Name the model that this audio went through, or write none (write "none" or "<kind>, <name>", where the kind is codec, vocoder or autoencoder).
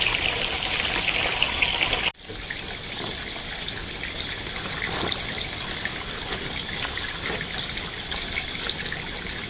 none